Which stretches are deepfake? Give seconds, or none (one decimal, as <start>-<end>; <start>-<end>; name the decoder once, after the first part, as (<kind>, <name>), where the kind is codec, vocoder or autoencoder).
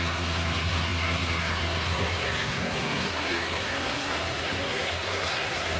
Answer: 0.0-5.8 (codec, SNAC)